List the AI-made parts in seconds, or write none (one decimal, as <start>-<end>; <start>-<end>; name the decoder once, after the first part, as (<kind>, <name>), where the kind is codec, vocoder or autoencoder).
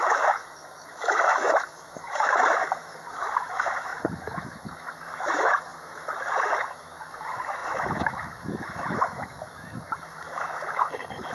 0.0-11.3 (autoencoder, DAC-VAE)